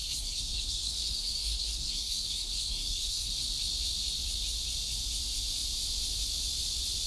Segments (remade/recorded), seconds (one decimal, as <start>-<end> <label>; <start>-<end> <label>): 0.0-3.3 remade; 3.3-7.1 recorded